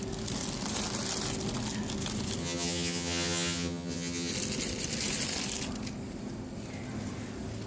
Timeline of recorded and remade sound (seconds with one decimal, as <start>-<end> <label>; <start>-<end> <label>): 0.0-2.4 recorded; 2.4-4.3 remade; 4.3-7.7 recorded